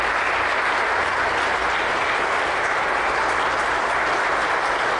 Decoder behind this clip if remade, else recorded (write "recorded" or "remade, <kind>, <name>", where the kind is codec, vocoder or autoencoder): recorded